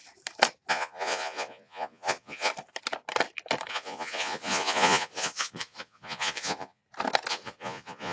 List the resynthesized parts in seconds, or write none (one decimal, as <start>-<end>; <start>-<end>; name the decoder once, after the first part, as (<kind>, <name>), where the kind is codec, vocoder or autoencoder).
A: 0.7-2.5 (vocoder, Vocos); 3.7-6.8; 7.3-8.1